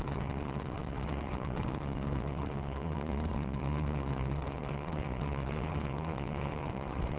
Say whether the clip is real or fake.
fake